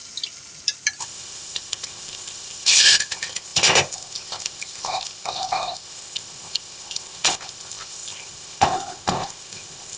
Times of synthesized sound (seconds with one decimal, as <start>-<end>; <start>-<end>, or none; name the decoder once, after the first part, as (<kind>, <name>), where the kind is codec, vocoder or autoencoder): 1.0-10.0 (codec, ZipCodec)